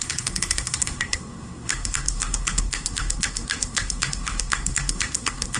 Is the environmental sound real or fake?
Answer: fake